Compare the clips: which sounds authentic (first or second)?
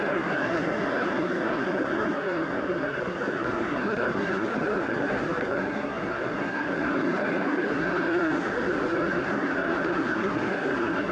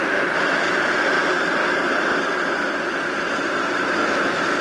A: second